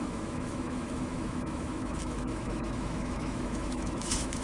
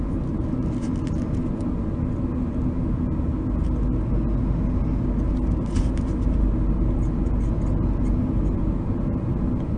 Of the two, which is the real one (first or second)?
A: second